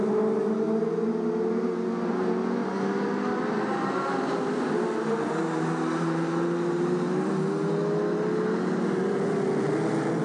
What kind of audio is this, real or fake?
real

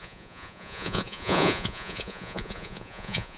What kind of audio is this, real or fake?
fake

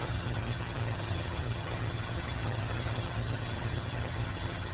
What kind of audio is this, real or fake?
fake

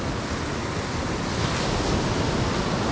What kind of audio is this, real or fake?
real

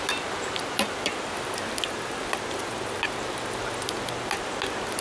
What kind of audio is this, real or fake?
real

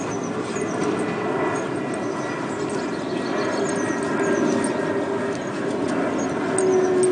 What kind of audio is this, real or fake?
real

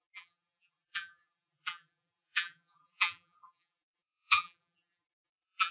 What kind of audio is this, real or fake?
fake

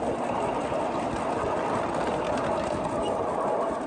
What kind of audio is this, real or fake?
real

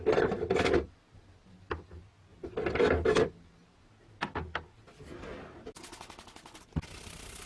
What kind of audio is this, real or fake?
real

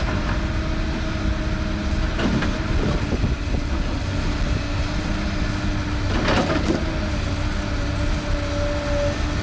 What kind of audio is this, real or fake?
real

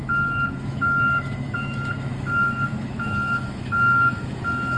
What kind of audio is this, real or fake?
fake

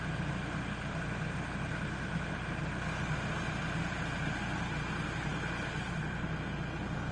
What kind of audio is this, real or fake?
real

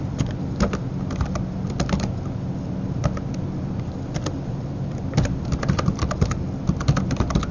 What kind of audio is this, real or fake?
real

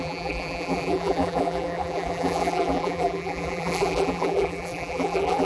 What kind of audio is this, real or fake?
fake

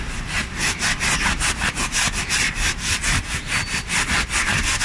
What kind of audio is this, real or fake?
real